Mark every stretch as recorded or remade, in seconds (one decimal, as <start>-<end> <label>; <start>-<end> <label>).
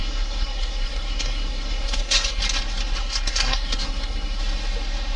0.0-2.4 remade; 2.4-3.0 recorded; 3.0-4.4 remade; 4.4-5.2 recorded